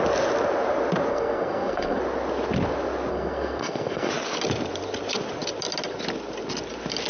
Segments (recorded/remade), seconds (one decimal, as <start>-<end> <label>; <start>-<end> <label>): 0.0-1.1 recorded; 1.1-2.0 remade; 2.0-3.1 recorded; 3.1-4.1 remade; 4.1-7.1 recorded